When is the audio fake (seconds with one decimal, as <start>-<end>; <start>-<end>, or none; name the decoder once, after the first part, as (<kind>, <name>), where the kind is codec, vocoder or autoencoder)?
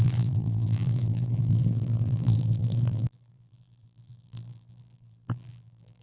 0.0-6.0 (vocoder, BigVGAN v2)